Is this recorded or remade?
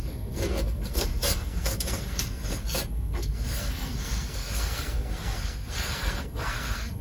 remade